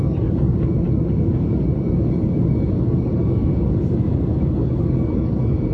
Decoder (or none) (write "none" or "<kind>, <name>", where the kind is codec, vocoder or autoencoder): codec, DAC